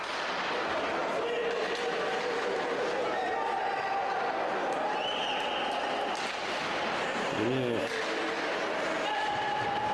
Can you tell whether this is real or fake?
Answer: real